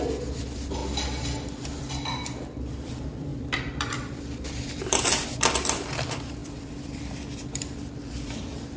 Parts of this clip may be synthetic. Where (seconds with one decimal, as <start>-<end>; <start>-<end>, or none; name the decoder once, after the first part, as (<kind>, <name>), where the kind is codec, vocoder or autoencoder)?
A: 0.0-0.8 (vocoder, BigVGAN v2); 2.7-8.8